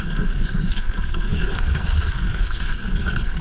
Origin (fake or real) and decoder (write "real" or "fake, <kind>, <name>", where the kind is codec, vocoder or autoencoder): fake, codec, SNAC